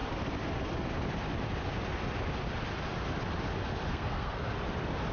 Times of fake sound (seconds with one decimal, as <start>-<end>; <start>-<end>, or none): 3.9-4.4